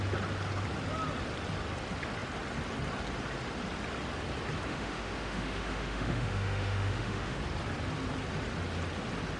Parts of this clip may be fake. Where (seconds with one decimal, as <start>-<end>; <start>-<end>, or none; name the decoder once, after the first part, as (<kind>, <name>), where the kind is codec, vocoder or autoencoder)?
4.7-7.4 (autoencoder, DAC-VAE)